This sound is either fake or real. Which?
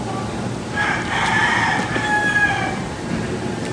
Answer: real